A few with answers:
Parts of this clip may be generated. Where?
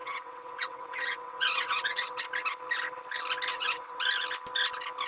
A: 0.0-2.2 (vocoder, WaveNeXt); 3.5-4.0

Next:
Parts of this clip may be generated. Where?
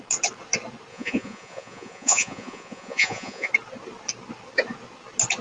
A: 0.9-3.5 (vocoder, Vocos)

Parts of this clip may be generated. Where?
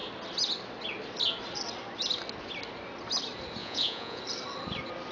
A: 3.6-4.2 (vocoder, Vocos)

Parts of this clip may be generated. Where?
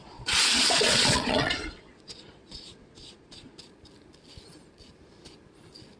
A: 0.0-3.6 (vocoder, Vocos)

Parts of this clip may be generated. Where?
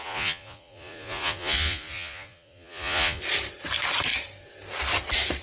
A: 0.0-3.2 (vocoder, Vocos)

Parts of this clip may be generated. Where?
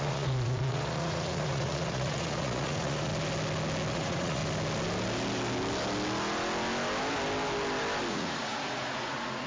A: 0.0-3.1 (vocoder, Vocos); 3.9-4.4; 8.1-9.5